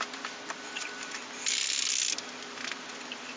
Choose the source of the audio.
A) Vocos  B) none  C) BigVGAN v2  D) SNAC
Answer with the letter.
B